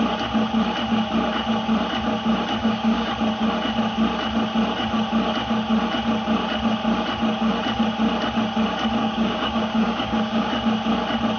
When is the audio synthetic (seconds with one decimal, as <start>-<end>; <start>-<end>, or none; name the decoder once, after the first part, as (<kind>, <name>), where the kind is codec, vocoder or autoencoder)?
2.6-3.1 (codec, DAC); 9.0-10.5